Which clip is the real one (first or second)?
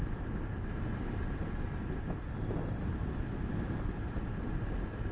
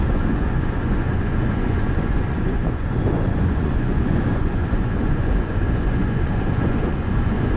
first